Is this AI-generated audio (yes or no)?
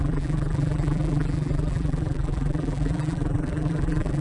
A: yes